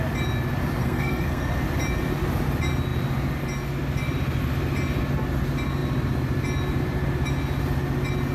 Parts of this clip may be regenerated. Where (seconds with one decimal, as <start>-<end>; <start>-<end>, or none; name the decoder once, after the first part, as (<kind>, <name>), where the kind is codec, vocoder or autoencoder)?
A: 0.8-1.6 (codec, SNAC)

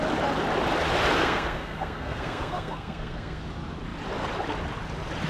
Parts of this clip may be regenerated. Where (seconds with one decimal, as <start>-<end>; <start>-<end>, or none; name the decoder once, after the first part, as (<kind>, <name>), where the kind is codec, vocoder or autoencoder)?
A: 1.2-3.4 (codec, SNAC)